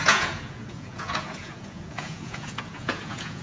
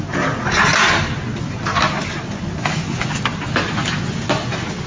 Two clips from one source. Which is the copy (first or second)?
first